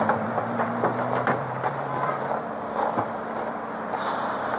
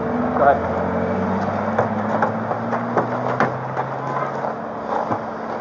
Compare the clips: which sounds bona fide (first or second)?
second